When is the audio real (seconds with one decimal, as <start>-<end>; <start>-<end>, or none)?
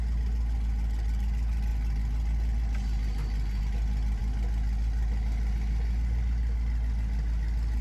0.0-7.8